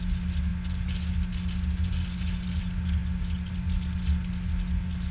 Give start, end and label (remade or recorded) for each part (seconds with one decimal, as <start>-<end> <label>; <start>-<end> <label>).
0.0-5.1 recorded